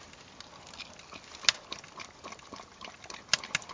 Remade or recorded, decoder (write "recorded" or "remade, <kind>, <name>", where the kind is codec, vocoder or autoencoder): recorded